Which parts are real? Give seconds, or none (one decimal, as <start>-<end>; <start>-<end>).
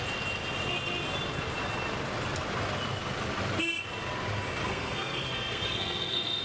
0.0-4.7